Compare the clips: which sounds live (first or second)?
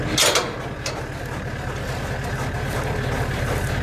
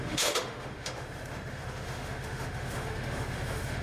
first